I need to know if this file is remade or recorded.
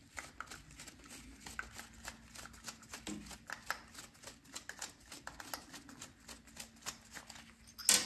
recorded